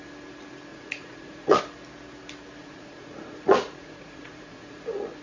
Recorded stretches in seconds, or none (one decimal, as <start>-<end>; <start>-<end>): 0.0-0.7; 1.6-2.6

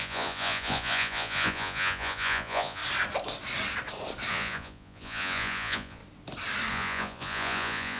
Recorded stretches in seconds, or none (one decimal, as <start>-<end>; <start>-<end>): 2.8-4.3; 6.0-6.7

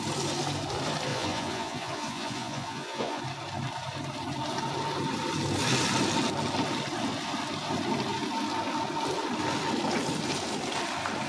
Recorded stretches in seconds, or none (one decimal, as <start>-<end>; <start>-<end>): 0.0-1.1; 3.2-11.3

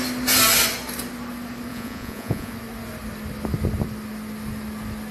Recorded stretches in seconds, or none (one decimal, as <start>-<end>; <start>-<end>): 0.0-1.7; 2.5-5.1

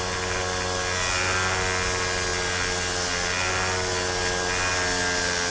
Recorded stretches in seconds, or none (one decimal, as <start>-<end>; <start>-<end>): 0.0-5.5

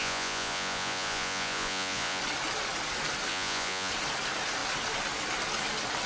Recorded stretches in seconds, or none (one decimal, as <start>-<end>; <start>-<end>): 2.2-3.3; 3.9-6.1